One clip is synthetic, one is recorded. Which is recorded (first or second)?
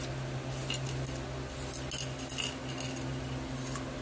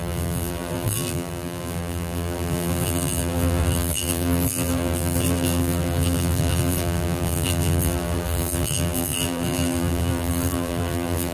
first